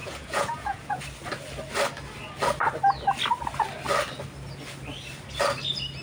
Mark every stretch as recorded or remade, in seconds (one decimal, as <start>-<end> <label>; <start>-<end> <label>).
0.0-1.0 remade; 1.0-6.0 recorded